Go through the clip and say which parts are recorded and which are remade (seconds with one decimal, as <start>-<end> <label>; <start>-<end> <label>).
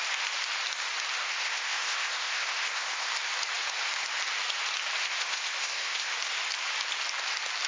0.0-1.2 recorded; 1.2-3.1 remade; 3.1-5.0 recorded; 5.0-6.1 remade; 6.1-7.7 recorded